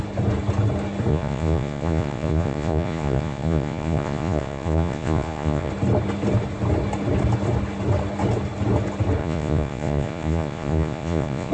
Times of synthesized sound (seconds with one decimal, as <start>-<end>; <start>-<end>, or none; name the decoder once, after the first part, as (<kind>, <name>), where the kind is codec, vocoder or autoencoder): 1.1-5.7 (vocoder, Vocos); 9.2-11.5